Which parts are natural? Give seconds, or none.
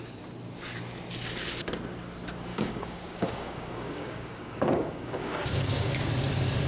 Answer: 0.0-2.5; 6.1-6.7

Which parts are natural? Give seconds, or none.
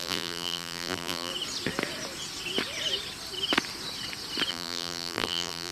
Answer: 1.3-4.5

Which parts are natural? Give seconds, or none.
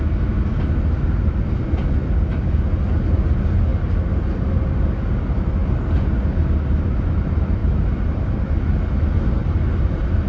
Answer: 0.0-10.3